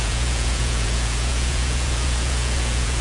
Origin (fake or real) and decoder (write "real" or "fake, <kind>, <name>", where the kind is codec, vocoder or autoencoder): fake, vocoder, Vocos